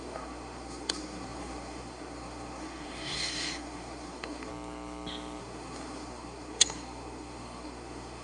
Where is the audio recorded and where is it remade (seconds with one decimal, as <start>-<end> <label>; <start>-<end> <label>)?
0.0-4.5 remade; 4.5-5.4 recorded; 5.4-8.2 remade